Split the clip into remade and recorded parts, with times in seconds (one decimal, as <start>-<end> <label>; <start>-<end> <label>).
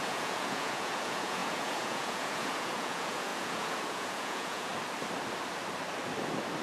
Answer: 0.0-4.7 remade; 4.7-6.6 recorded